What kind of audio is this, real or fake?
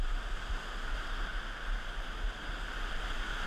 real